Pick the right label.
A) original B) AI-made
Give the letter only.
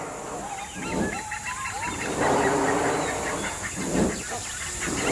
A